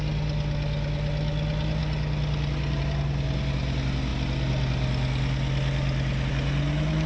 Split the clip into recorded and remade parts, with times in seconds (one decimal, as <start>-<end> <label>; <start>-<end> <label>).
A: 0.0-7.1 recorded